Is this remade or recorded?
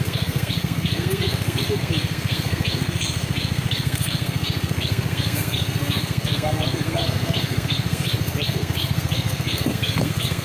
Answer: remade